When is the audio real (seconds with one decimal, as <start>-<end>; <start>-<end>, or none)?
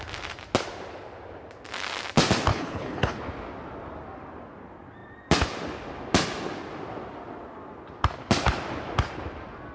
0.0-2.5; 3.2-9.7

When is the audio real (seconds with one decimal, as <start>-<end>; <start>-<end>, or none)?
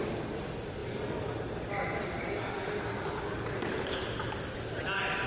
0.0-5.3